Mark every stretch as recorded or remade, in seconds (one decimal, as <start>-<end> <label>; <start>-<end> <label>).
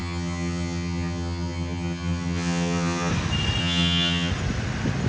0.0-3.1 remade; 3.1-3.6 recorded; 3.6-4.3 remade; 4.3-5.1 recorded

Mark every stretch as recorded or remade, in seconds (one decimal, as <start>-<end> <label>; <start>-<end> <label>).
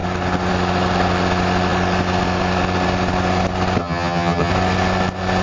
0.0-3.8 recorded; 3.8-4.5 remade; 4.5-5.4 recorded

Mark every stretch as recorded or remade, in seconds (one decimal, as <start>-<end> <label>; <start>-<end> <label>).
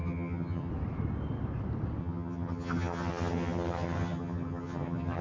0.0-0.7 remade; 0.7-2.0 recorded; 2.0-5.2 remade